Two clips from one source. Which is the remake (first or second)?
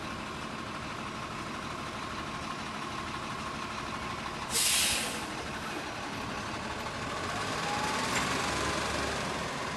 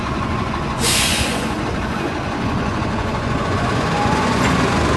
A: second